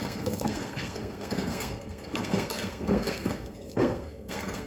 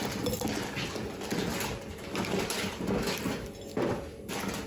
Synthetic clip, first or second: first